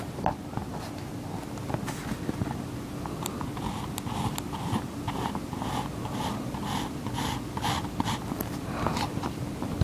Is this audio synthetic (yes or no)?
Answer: no